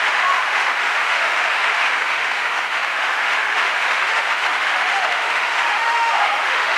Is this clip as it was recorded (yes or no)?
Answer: no